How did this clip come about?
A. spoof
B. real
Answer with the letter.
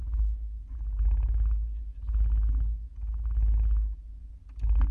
B